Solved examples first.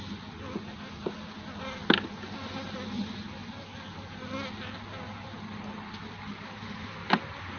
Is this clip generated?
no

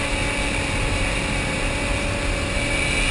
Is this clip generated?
no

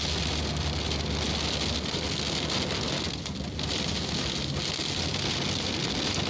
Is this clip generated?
no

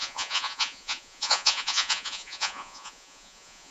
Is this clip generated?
yes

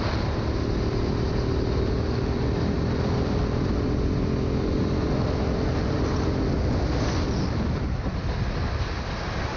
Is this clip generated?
no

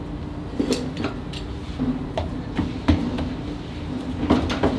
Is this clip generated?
no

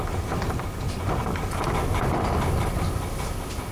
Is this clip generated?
no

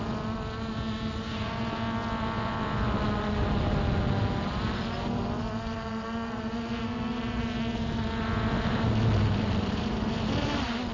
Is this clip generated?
no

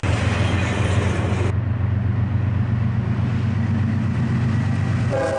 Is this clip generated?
no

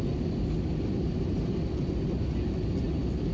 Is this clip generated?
no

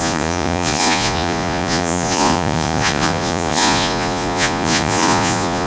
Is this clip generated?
yes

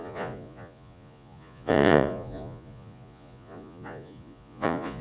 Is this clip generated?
yes